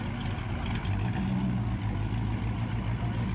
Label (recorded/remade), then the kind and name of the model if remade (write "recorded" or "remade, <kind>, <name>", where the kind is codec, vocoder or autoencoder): recorded